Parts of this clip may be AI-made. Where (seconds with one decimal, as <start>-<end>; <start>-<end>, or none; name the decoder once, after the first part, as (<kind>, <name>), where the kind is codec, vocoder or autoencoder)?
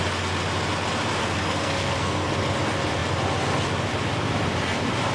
1.2-2.3 (codec, SNAC)